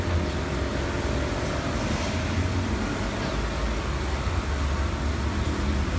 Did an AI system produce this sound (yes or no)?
no